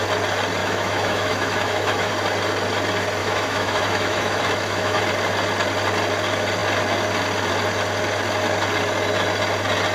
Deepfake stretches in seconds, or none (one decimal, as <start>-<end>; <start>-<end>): 0.6-2.1; 3.2-5.0